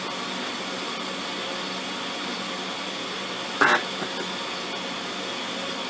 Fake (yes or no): no